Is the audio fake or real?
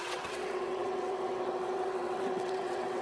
fake